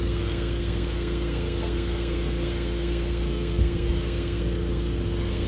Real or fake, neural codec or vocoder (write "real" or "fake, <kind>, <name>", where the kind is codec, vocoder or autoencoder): fake, codec, SNAC